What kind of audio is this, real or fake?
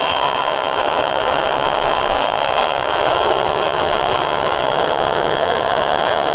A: fake